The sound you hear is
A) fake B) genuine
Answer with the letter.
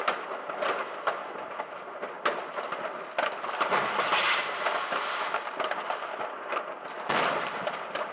B